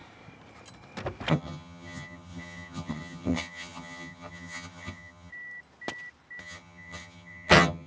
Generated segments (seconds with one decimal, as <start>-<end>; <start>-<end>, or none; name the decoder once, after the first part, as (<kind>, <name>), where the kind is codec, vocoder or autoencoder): 1.3-5.3 (vocoder, HiFi-GAN); 6.4-7.9

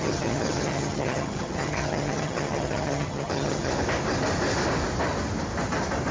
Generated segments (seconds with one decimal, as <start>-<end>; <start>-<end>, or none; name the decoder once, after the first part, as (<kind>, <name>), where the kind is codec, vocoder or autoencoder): 0.0-3.7 (vocoder, HiFi-GAN)

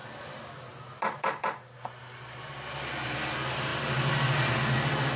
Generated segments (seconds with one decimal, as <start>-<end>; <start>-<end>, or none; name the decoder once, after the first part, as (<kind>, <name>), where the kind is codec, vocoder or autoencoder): none

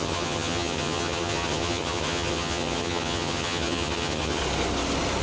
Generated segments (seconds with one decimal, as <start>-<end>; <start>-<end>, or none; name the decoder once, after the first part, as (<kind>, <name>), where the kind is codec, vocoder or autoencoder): 0.0-4.4 (vocoder, HiFi-GAN)

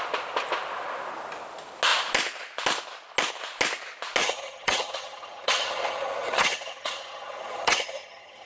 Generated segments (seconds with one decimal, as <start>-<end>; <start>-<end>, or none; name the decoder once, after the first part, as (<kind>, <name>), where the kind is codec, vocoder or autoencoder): 4.2-8.5 (vocoder, HiFi-GAN)

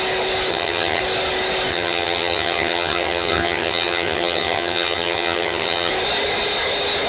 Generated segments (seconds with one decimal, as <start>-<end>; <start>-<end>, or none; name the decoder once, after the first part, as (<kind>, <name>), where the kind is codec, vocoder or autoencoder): 0.5-1.0 (vocoder, HiFi-GAN); 1.7-5.9

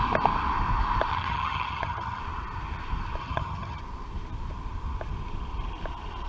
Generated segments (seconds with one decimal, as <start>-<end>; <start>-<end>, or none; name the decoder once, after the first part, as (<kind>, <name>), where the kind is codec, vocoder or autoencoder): 1.1-2.2 (vocoder, HiFi-GAN); 3.2-3.8